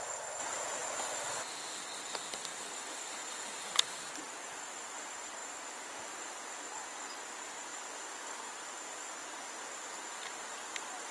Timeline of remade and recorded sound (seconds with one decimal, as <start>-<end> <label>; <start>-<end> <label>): 0.0-11.1 recorded